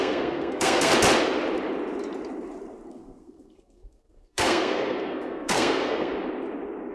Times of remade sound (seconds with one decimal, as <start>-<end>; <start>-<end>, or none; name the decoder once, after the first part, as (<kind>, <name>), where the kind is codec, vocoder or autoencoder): 0.0-0.9 (codec, SNAC); 2.9-6.1